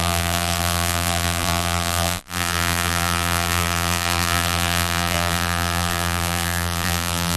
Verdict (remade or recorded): remade